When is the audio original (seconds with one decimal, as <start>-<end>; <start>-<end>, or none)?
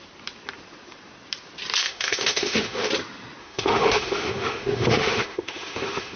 0.0-1.8; 2.9-3.4